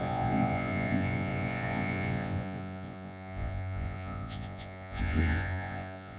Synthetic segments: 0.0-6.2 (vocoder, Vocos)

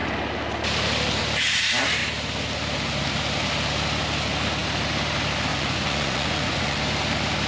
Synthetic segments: 5.5-6.8 (vocoder, Vocos)

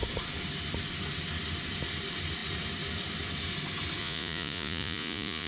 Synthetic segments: 4.0-5.5 (vocoder, Vocos)